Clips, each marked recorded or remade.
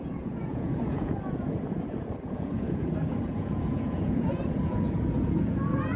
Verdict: remade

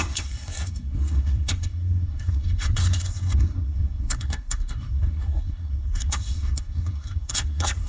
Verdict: remade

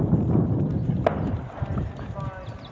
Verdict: recorded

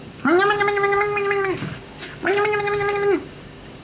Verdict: remade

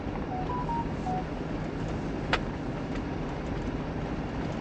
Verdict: recorded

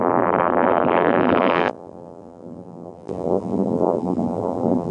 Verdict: remade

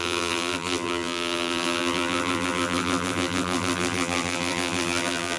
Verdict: remade